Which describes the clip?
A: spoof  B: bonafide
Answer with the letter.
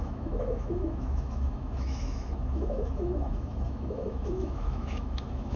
A